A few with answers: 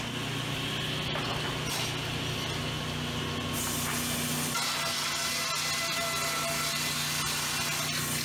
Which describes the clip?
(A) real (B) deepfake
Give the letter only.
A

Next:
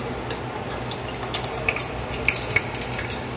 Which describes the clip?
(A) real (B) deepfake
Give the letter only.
A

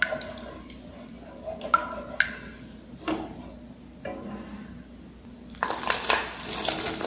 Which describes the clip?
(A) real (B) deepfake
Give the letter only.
A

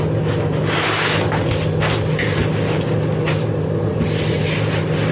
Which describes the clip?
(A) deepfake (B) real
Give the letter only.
B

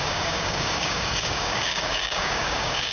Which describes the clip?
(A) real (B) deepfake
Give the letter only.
B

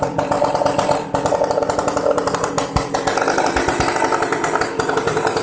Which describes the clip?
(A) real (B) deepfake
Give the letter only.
A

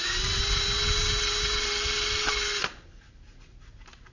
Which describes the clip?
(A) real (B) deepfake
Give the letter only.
A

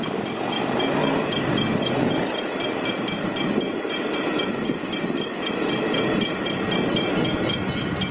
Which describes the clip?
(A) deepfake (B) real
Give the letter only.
B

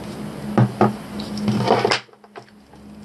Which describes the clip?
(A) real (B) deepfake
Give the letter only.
A